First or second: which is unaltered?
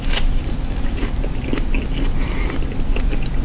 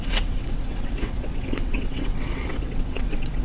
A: first